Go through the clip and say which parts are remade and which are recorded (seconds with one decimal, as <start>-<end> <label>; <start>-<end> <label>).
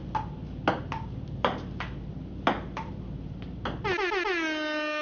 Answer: 0.0-5.0 recorded